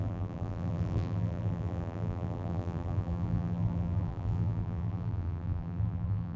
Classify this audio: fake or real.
fake